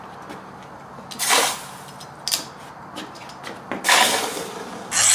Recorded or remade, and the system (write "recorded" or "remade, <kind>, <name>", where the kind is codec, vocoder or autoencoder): recorded